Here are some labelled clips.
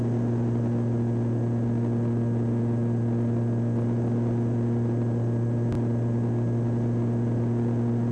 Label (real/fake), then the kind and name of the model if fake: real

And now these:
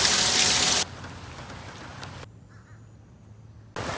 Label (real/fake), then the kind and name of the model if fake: real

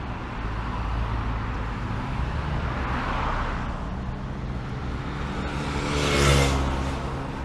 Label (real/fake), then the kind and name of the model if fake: real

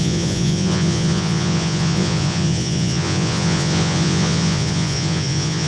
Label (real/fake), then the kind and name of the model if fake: fake, vocoder, Vocos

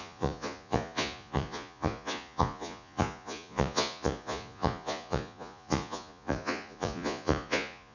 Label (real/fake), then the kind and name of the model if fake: fake, vocoder, Vocos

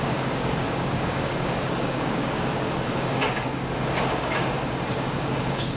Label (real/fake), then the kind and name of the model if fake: fake, codec, DAC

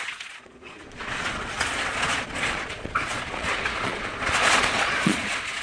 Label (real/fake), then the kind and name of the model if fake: fake, vocoder, Vocos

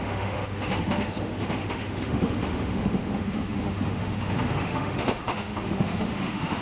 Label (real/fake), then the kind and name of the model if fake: fake, autoencoder, DAC-VAE